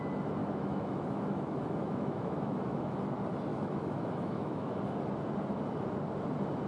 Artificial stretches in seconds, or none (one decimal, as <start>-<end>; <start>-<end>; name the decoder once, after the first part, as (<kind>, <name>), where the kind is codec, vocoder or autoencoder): 0.4-3.0 (autoencoder, DAC-VAE); 3.5-4.8

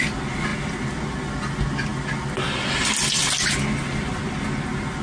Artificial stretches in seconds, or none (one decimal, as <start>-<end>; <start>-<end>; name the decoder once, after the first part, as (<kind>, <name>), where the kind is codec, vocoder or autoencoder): none

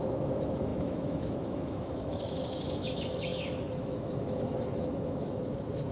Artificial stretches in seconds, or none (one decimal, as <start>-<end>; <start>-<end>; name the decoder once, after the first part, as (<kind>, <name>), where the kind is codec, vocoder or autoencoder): 0.0-5.9 (autoencoder, DAC-VAE)

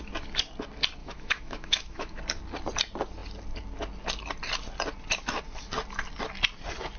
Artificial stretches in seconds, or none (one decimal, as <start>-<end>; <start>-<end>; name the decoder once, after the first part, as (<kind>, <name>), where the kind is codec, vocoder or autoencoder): 1.0-2.2 (autoencoder, DAC-VAE)

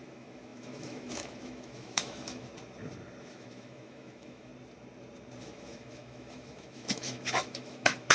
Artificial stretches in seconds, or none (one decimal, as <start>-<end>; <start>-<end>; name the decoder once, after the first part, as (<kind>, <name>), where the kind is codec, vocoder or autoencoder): 0.0-2.5 (autoencoder, DAC-VAE); 3.2-4.5; 5.4-8.1

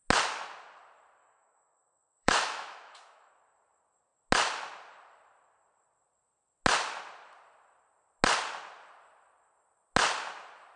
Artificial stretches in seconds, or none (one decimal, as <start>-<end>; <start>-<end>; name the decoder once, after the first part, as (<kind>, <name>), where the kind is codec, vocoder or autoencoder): 1.2-3.3 (autoencoder, DAC-VAE)

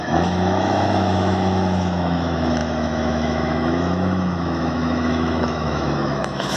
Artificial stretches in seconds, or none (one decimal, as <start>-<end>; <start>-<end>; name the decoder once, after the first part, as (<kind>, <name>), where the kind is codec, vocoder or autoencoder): 0.0-6.6 (autoencoder, DAC-VAE)

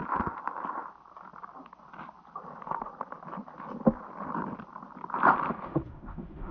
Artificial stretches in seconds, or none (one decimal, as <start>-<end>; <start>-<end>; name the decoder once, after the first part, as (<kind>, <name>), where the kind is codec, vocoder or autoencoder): 5.5-6.5 (autoencoder, DAC-VAE)